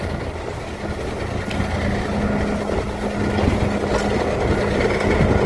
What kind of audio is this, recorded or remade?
recorded